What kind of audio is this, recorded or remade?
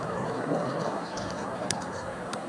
remade